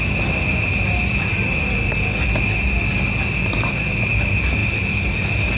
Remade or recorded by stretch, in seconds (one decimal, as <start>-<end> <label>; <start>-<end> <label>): 0.0-5.6 recorded